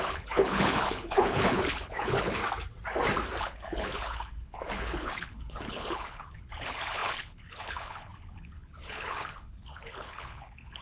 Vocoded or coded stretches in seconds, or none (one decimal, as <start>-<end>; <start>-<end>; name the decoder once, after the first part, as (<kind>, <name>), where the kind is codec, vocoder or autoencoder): 0.0-2.4 (codec, HILCodec); 3.4-10.8

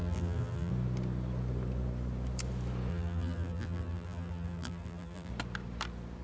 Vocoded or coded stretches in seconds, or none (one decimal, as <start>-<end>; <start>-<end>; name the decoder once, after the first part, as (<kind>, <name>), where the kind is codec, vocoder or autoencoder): 0.0-0.7 (vocoder, BigVGAN v2); 2.9-5.3

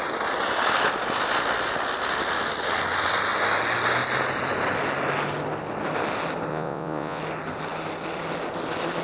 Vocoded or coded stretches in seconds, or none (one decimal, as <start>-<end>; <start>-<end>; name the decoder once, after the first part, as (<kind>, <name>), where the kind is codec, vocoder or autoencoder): 6.5-7.2 (vocoder, Vocos)

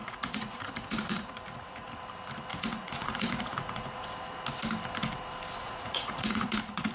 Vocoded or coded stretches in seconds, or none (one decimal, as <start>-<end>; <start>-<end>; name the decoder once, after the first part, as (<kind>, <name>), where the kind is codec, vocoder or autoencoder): 0.0-1.9 (vocoder, Vocos); 2.5-4.1; 5.6-6.9

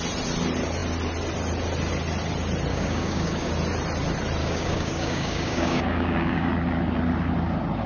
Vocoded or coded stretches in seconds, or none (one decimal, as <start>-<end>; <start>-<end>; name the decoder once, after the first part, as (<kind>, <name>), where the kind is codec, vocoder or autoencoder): 2.7-3.5 (codec, DAC); 4.4-6.5

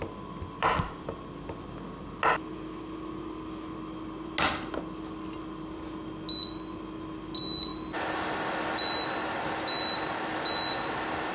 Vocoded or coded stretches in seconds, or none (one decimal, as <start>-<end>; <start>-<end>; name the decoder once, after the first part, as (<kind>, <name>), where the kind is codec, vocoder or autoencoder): none

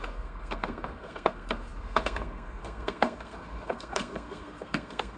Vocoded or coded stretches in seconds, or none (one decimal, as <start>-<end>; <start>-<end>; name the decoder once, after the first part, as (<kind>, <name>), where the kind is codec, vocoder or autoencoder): 0.0-5.2 (codec, SNAC)

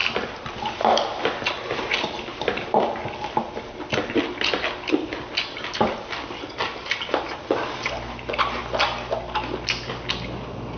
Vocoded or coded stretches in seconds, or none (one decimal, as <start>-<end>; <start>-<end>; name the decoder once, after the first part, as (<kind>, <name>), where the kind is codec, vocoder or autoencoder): 2.3-2.8 (vocoder, BigVGAN v2)